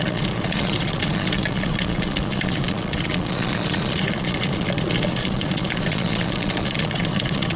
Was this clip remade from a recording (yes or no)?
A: yes